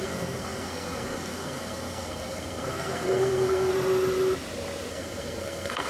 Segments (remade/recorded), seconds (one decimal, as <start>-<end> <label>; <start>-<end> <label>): 0.0-3.7 remade; 3.7-4.9 recorded; 4.9-5.9 remade